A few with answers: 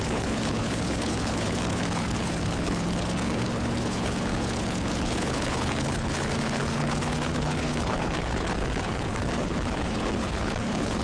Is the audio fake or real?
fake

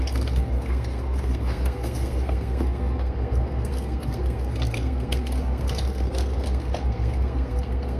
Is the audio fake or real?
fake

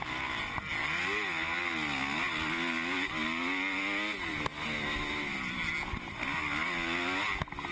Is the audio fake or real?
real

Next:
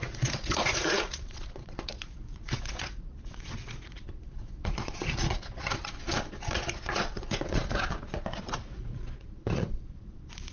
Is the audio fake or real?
fake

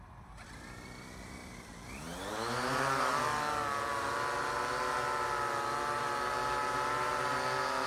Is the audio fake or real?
real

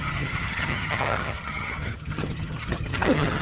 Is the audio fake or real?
fake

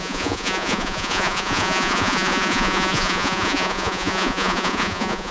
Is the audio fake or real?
fake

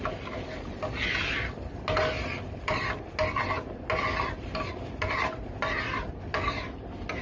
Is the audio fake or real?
real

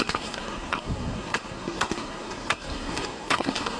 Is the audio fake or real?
fake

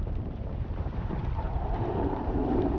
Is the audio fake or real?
fake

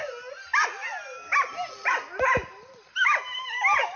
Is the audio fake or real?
real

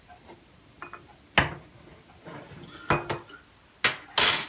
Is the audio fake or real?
real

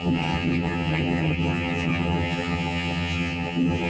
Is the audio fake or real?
fake